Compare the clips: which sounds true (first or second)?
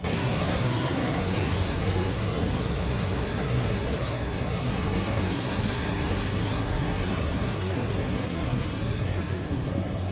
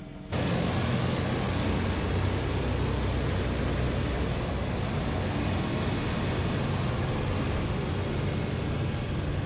second